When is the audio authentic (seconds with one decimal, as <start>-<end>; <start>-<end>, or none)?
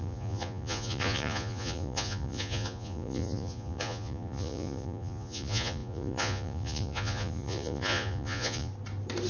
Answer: 8.7-9.3